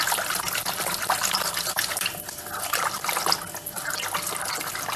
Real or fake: real